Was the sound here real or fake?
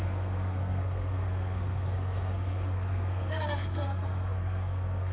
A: fake